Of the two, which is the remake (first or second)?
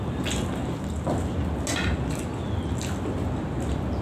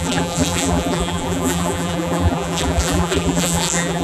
second